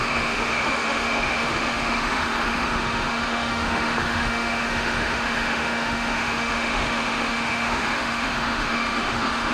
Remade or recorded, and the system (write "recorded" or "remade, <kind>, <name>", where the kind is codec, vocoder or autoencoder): remade, autoencoder, DAC-VAE